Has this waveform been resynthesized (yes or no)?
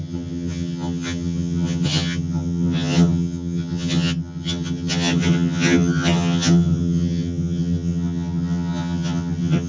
yes